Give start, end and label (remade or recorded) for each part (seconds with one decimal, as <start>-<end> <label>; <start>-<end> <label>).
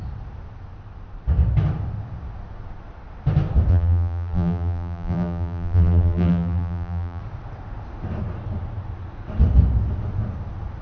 0.0-3.7 recorded; 3.7-7.2 remade; 7.2-10.8 recorded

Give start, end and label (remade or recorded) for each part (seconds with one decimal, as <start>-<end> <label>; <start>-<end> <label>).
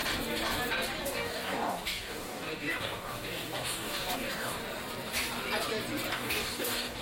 0.0-1.0 recorded; 1.0-4.6 remade; 4.6-6.1 recorded; 6.1-7.0 remade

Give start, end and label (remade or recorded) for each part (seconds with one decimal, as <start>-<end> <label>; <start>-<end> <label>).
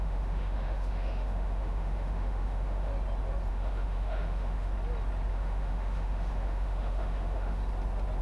0.0-2.9 remade; 2.9-3.5 recorded; 3.5-4.7 remade; 4.7-5.3 recorded; 5.3-7.6 remade; 7.6-8.2 recorded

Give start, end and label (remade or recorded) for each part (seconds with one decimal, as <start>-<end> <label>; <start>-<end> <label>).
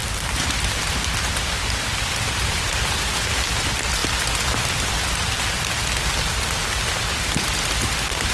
0.0-8.3 recorded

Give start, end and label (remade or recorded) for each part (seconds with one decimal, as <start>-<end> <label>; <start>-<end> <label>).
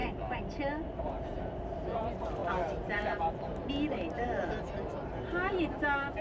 0.0-2.4 recorded; 2.4-3.7 remade; 3.7-6.2 recorded